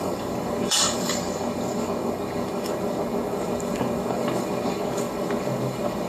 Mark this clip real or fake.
fake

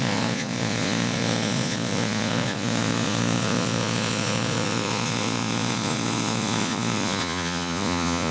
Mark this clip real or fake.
fake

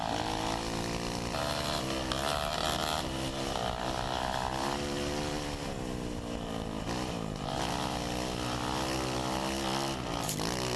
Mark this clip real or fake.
real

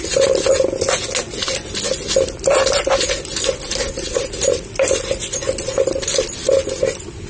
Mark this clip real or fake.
real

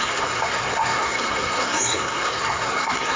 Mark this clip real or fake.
fake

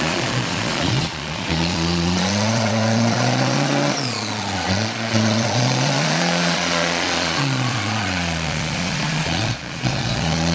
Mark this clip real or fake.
fake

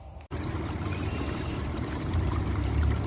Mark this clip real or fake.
fake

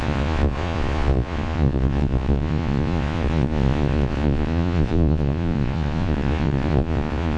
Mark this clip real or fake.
fake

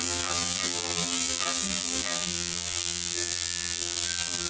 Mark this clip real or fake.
fake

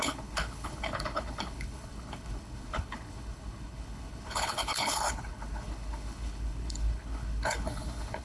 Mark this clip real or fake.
fake